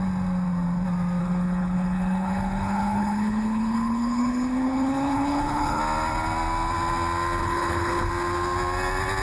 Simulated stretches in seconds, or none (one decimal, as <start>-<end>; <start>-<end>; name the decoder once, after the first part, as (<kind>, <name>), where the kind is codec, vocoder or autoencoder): 1.2-5.8 (codec, HILCodec); 7.4-8.1